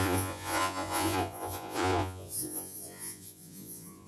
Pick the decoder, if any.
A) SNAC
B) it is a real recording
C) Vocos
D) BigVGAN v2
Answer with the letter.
C